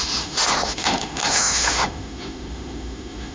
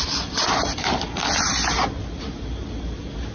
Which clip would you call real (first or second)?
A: second